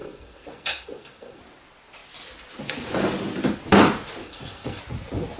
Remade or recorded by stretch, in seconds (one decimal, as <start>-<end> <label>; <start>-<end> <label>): 0.0-1.4 remade; 1.4-4.2 recorded; 4.2-4.8 remade; 4.8-5.4 recorded